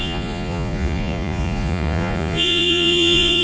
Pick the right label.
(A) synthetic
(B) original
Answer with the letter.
A